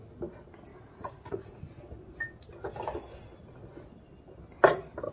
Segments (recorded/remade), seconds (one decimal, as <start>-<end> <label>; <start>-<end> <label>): 0.0-0.7 recorded; 0.7-1.6 remade; 1.6-5.1 recorded